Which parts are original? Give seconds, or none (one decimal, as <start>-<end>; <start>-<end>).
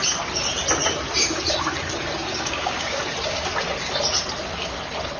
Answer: 0.0-2.3; 3.0-5.2